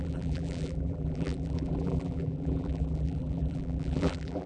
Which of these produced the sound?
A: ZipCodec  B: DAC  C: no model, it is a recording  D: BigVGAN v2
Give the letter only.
D